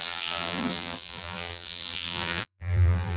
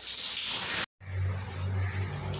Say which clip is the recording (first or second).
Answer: second